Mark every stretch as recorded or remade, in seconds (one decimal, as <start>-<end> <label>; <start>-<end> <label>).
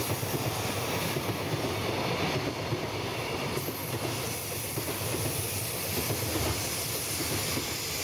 0.0-3.1 recorded; 3.1-8.0 remade